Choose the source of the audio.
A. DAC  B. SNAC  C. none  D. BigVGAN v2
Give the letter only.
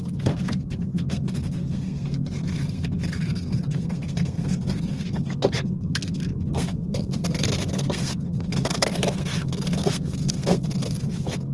B